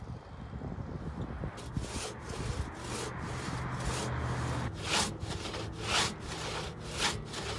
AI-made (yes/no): no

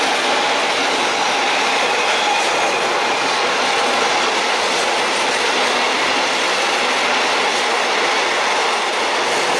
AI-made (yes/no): no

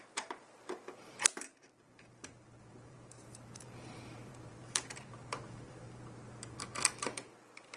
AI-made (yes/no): yes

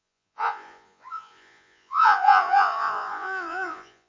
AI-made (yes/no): yes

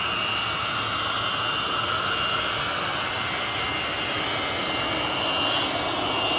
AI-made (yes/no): no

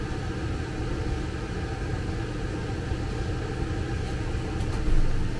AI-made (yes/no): no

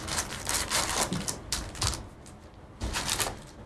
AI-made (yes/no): no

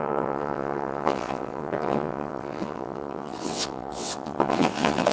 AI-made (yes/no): yes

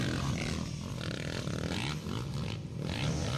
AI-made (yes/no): no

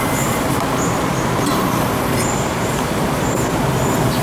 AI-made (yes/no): yes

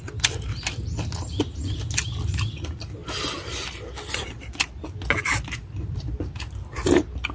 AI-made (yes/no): no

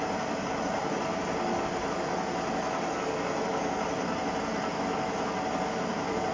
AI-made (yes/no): no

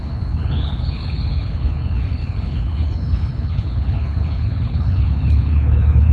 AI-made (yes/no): yes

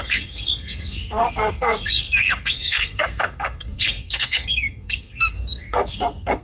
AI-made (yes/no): yes